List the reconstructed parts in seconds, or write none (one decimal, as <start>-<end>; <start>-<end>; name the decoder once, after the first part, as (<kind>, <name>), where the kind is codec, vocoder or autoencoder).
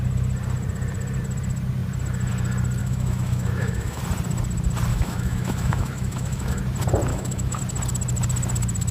2.8-4.0 (autoencoder, DAC-VAE); 4.9-6.6; 7.1-7.6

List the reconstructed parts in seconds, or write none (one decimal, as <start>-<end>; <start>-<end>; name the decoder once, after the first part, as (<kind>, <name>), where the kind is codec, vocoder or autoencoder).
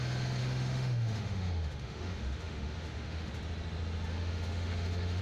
0.4-3.3 (autoencoder, DAC-VAE); 4.1-5.2